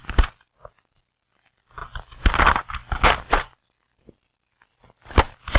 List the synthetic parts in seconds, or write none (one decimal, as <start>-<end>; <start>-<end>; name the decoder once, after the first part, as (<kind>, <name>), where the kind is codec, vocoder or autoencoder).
none

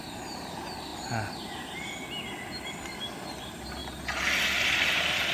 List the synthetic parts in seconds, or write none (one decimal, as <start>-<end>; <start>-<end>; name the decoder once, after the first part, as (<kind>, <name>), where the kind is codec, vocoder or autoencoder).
0.0-0.9 (vocoder, BigVGAN v2); 2.7-3.8; 4.7-5.3

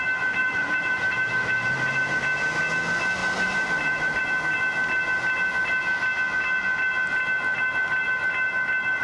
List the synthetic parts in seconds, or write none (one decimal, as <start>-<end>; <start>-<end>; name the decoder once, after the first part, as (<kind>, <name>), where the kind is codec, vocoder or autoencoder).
0.4-2.2 (vocoder, BigVGAN v2); 3.2-4.2

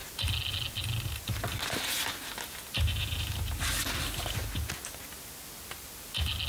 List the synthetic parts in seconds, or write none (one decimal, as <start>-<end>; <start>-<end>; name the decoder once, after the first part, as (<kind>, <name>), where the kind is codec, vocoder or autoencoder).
none

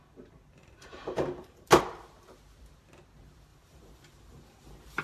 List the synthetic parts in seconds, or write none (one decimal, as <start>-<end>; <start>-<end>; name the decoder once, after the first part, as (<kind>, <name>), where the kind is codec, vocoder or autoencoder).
0.6-1.8 (vocoder, BigVGAN v2); 3.5-5.0